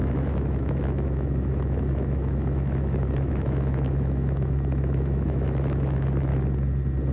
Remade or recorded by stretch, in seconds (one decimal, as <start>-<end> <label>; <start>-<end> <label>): 0.0-6.3 remade; 6.3-7.1 recorded

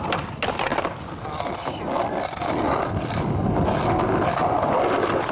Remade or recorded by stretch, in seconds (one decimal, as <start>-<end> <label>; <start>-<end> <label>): 0.0-5.3 recorded

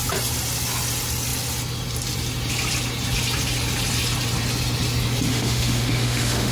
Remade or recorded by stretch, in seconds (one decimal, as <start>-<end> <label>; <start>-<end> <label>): 0.0-5.3 recorded; 5.3-6.5 remade

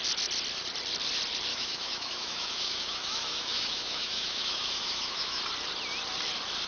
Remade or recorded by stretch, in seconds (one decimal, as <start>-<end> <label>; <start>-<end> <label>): 0.0-1.5 recorded; 1.5-5.4 remade; 5.4-6.7 recorded

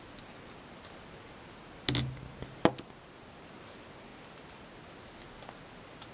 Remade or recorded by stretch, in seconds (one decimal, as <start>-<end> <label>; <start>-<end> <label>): 0.0-6.1 recorded

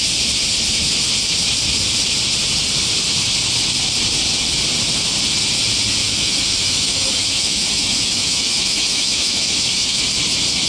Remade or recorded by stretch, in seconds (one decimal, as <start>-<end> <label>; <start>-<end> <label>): 0.0-6.0 recorded; 6.0-10.0 remade; 10.0-10.7 recorded

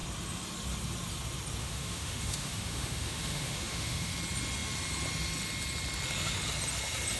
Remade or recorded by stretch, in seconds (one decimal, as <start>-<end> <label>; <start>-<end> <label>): 0.0-1.6 recorded; 1.6-4.1 remade; 4.1-7.2 recorded

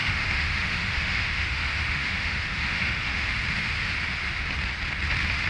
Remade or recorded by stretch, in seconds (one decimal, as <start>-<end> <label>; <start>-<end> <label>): 0.0-3.3 remade; 3.3-5.5 recorded